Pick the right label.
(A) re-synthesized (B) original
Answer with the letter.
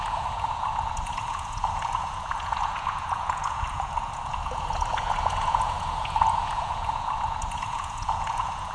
A